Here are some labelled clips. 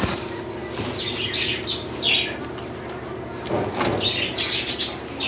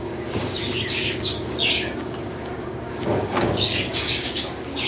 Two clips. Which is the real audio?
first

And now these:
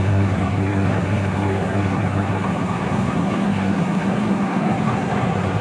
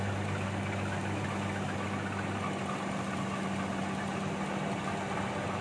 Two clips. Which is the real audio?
second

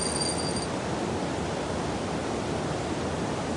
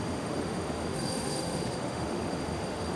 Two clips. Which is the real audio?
first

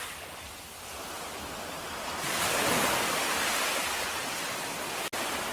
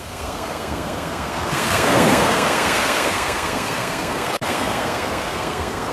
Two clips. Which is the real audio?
first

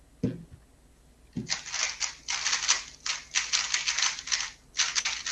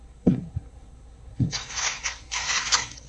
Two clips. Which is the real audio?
first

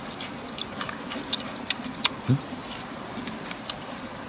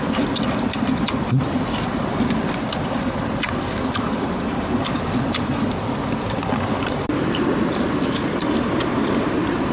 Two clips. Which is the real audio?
first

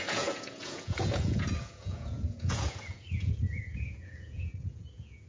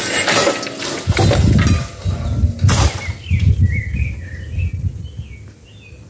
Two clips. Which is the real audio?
second